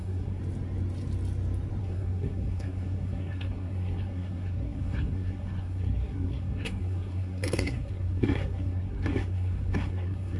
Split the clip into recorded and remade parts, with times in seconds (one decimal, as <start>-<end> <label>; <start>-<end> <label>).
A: 0.0-0.4 remade; 0.4-1.8 recorded; 1.8-10.4 remade